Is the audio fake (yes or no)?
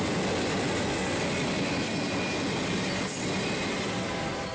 no